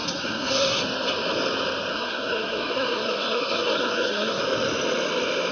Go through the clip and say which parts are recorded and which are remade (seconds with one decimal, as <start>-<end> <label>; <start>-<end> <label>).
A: 0.0-0.8 remade; 0.8-1.9 recorded; 1.9-4.4 remade; 4.4-5.5 recorded